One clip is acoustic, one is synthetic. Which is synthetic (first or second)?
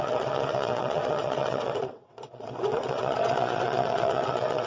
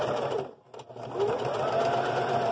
first